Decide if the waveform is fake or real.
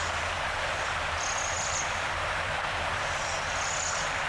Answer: real